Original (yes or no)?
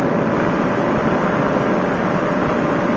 yes